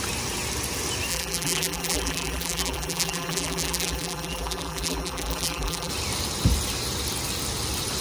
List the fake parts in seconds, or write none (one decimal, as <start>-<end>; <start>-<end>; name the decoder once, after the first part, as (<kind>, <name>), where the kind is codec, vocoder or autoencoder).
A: 1.1-5.9 (vocoder, BigVGAN v2)